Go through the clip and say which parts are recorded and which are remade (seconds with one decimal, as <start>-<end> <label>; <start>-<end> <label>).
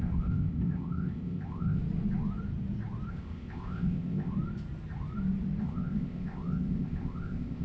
0.0-1.8 remade; 1.8-3.1 recorded; 3.1-4.3 remade; 4.3-5.6 recorded; 5.6-7.6 remade